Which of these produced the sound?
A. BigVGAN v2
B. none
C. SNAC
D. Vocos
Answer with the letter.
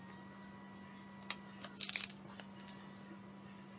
B